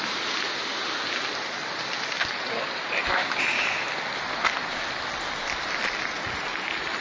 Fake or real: real